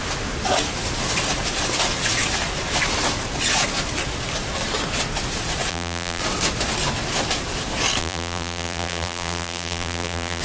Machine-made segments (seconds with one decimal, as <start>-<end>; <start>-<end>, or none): 5.7-6.2; 8.0-10.4